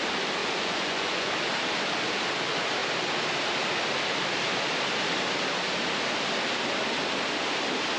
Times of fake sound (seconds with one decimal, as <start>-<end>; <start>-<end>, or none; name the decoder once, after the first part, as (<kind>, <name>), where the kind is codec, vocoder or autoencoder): 0.4-1.3 (vocoder, Vocos)